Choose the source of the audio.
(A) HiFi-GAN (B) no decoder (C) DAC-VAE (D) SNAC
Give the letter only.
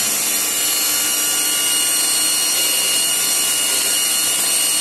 B